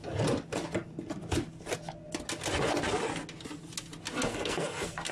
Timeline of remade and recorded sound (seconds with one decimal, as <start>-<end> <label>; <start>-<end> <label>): 0.0-4.3 recorded; 4.3-5.1 remade